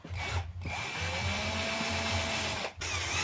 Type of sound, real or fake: real